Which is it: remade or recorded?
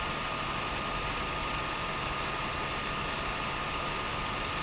recorded